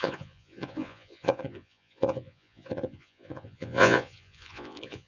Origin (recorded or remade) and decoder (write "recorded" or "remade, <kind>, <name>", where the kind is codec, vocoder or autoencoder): remade, vocoder, Vocos